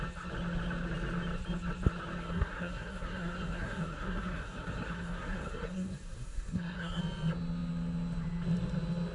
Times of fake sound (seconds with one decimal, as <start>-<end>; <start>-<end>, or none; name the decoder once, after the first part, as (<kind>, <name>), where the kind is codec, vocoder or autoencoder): 2.2-7.0 (codec, SNAC)